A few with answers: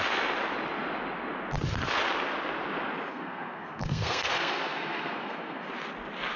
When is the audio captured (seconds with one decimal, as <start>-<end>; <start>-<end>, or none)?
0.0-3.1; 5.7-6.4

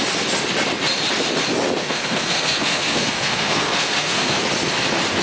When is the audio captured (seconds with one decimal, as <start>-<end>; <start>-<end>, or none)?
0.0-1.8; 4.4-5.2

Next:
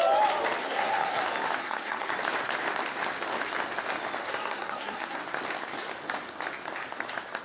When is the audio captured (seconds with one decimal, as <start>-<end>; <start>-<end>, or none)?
0.0-0.6; 1.2-1.6; 2.1-4.2; 5.2-7.4

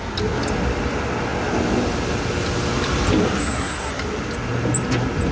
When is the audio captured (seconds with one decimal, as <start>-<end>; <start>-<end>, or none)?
0.0-3.4; 3.9-5.3

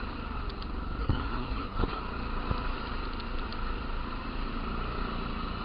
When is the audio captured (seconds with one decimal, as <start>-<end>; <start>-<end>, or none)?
0.0-1.0; 2.0-5.6